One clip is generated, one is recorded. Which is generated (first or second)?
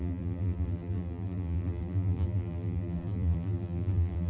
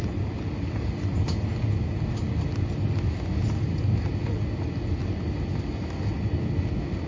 first